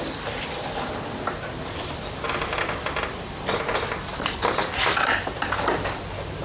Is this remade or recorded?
recorded